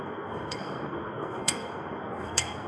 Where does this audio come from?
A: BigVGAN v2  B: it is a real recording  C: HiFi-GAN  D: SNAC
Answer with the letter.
D